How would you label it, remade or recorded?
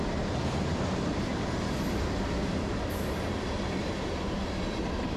recorded